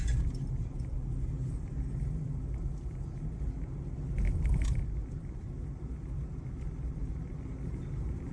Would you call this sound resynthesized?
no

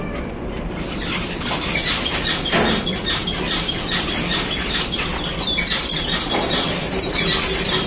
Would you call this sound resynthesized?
yes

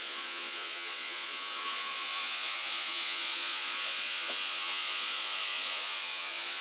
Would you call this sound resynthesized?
yes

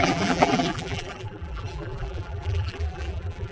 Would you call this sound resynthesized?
yes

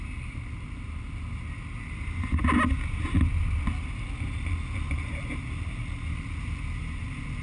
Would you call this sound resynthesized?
no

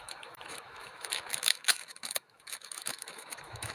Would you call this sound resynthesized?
yes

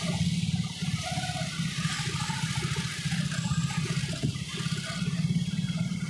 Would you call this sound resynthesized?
no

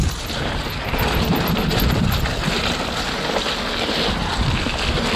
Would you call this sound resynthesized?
no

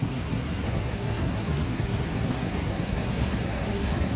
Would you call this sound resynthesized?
yes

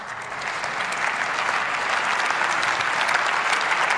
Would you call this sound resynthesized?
no